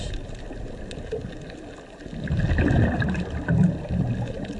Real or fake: real